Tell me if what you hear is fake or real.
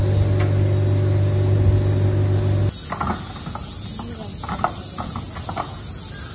real